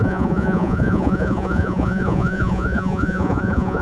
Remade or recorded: remade